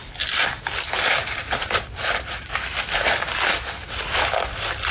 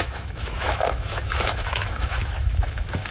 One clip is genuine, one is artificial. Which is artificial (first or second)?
second